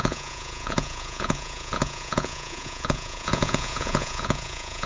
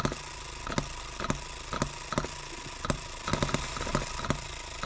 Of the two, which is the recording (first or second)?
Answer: second